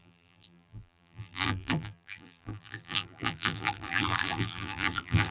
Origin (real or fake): fake